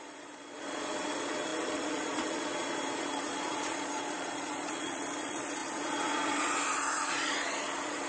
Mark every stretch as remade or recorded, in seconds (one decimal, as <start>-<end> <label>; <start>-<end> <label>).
0.0-8.1 remade